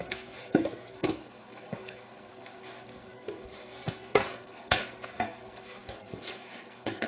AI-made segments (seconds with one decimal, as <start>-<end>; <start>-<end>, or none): 0.0-7.1